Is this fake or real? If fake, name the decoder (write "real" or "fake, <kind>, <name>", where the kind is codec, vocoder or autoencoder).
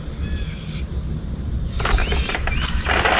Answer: real